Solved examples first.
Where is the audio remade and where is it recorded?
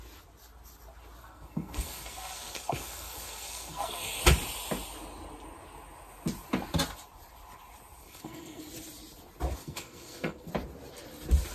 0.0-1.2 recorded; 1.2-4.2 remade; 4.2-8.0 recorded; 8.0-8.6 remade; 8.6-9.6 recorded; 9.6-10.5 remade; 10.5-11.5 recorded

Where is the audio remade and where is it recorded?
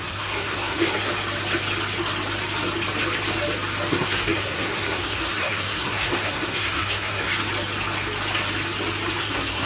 0.0-1.1 remade; 1.1-3.9 recorded; 3.9-7.3 remade; 7.3-9.2 recorded; 9.2-9.6 remade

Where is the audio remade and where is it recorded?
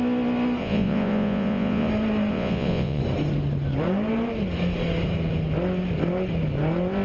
0.0-0.6 recorded; 0.6-1.9 remade; 1.9-2.3 recorded; 2.3-3.0 remade; 3.0-7.0 recorded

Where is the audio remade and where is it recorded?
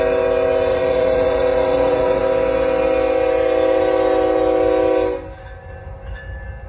0.0-0.7 recorded; 0.7-2.2 remade; 2.2-6.7 recorded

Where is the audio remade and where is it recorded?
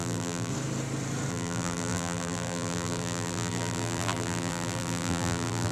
0.0-0.5 remade; 0.5-1.3 recorded; 1.3-5.7 remade